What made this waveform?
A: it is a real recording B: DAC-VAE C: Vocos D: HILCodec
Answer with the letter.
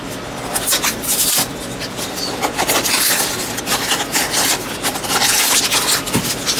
A